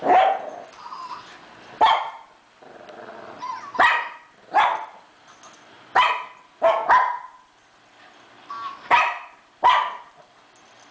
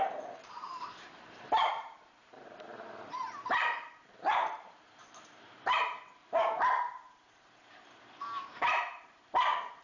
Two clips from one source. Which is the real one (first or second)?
first